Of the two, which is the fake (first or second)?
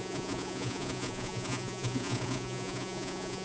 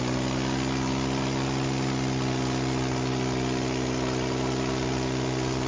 first